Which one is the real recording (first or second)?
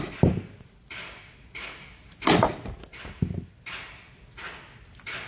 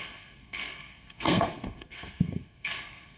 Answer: first